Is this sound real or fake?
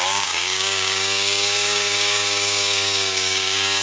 fake